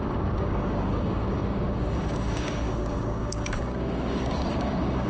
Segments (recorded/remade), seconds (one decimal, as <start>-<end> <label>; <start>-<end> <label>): 0.0-5.1 remade